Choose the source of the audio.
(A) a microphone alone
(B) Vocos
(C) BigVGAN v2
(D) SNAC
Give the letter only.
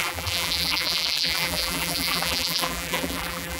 C